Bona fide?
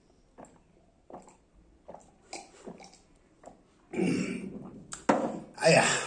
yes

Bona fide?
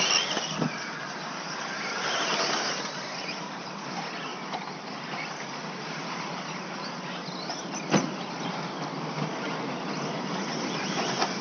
yes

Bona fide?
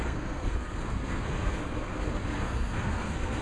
no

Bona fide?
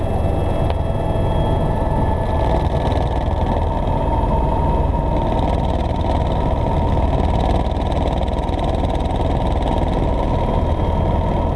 yes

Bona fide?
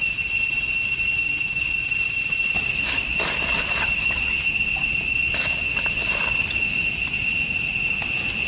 yes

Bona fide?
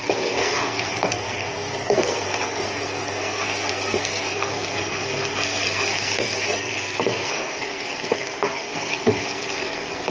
no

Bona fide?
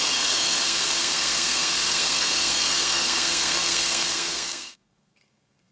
no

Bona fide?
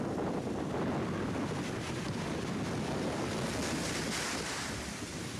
yes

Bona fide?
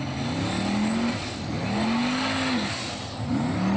yes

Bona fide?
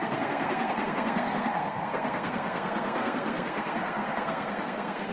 no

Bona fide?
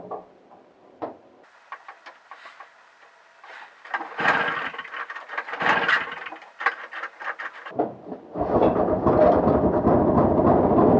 yes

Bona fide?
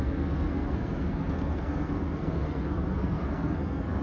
no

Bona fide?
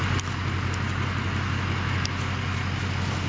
yes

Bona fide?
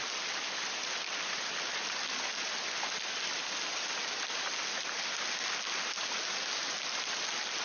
yes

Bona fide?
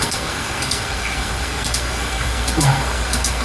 no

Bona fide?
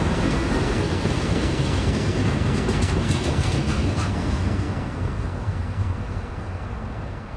no